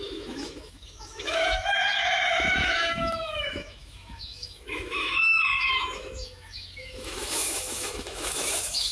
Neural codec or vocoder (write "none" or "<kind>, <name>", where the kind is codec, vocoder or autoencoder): autoencoder, DAC-VAE